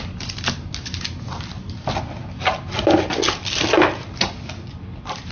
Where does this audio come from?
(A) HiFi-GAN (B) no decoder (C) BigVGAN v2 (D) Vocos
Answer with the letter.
B